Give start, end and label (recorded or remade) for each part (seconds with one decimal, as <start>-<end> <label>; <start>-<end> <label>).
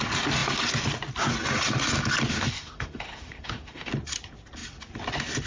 0.0-2.3 recorded; 2.3-3.9 remade; 3.9-5.5 recorded